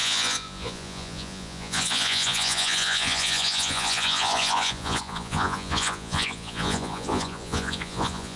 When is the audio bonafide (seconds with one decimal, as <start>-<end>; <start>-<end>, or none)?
none